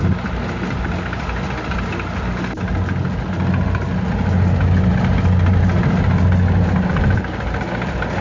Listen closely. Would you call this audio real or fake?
real